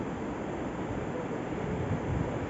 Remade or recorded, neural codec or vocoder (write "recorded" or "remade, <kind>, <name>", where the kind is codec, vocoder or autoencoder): recorded